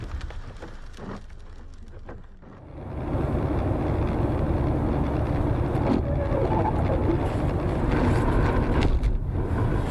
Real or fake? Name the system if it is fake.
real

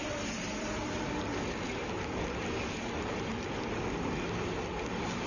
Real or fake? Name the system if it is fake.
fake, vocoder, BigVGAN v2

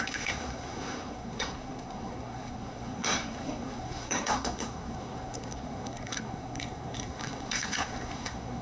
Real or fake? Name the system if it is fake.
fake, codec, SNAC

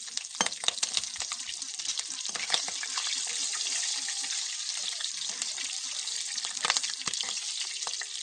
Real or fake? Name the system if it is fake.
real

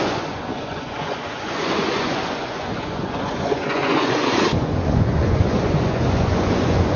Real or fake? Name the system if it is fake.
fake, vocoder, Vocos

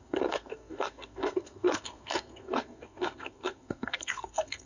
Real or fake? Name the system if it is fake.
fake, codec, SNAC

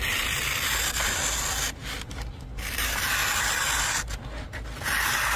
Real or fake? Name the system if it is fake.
real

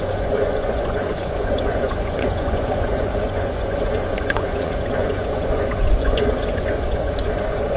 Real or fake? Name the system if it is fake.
fake, vocoder, Vocos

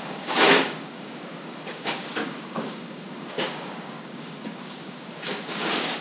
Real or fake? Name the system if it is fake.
fake, codec, DAC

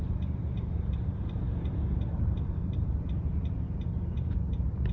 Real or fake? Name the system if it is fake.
fake, vocoder, BigVGAN v2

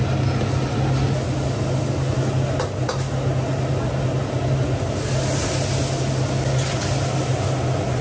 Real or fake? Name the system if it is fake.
real